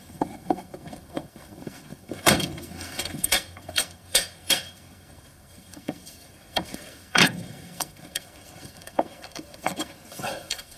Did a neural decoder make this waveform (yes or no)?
yes